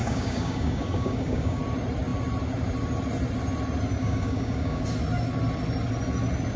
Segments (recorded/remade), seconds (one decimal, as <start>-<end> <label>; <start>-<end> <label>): 0.0-1.6 remade; 1.6-4.0 recorded; 4.0-4.8 remade; 4.8-6.6 recorded